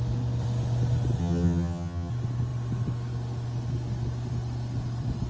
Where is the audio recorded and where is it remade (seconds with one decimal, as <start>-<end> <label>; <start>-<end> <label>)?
0.0-1.2 recorded; 1.2-2.1 remade; 2.1-5.3 recorded